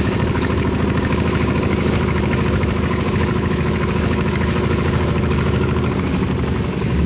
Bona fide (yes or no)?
no